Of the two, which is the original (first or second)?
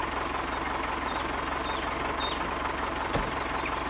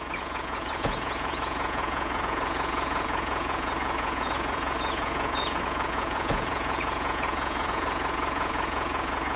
first